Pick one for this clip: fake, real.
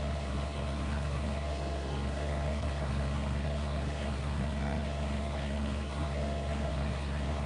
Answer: fake